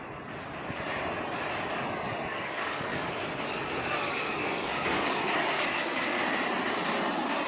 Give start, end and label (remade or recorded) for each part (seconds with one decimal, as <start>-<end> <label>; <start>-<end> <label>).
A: 0.0-2.3 recorded; 2.3-6.2 remade; 6.2-7.5 recorded